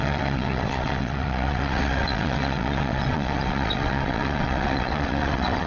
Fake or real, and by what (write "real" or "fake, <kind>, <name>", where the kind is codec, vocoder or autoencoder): fake, vocoder, WaveNeXt